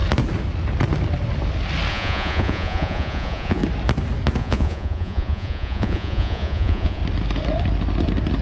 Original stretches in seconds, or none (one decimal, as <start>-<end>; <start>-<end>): 0.0-1.9; 3.6-4.4; 7.0-8.4